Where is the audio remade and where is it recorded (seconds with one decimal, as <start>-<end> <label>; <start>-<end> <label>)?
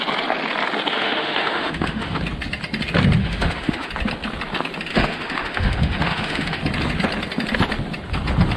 0.0-0.9 recorded; 0.9-2.2 remade; 2.2-3.2 recorded; 3.2-3.9 remade; 3.9-4.9 recorded; 4.9-6.6 remade; 6.6-8.6 recorded